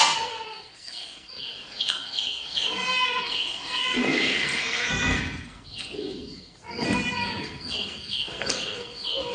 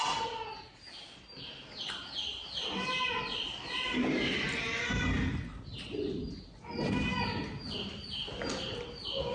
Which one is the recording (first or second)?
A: second